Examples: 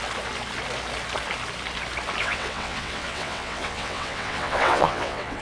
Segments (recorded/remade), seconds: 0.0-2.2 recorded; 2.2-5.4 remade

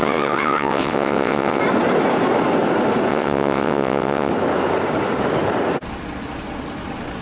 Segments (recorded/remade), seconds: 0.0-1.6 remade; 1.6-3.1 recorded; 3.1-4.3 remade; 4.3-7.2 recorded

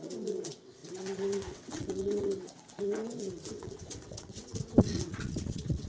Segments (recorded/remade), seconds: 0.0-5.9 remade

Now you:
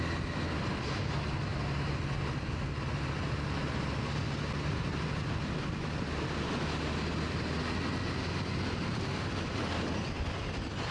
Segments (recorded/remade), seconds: 0.0-10.9 recorded

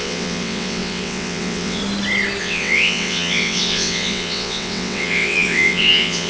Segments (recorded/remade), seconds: 0.0-1.8 remade; 1.8-2.4 recorded; 2.4-6.3 remade